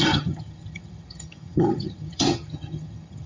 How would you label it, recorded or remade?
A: remade